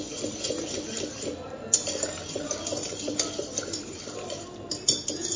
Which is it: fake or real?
real